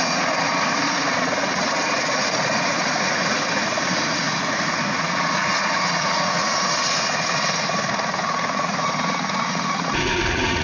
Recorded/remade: remade